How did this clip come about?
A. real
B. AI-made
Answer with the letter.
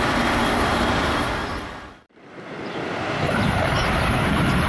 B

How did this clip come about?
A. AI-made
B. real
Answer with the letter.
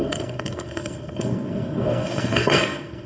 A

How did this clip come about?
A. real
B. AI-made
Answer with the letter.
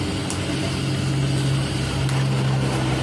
A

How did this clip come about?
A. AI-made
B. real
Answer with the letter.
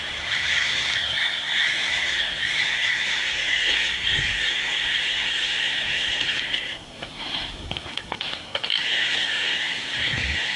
A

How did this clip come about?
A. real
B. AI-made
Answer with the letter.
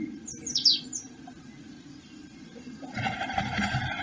A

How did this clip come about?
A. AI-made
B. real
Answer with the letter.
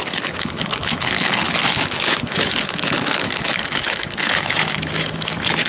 A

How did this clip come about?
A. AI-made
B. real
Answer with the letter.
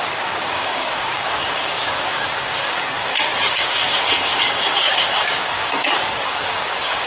A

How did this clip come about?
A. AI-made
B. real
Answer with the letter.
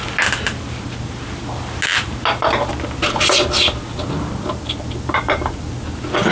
B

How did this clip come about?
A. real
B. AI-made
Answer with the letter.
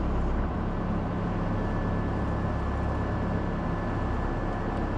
A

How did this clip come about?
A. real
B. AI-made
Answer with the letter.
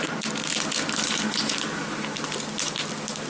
A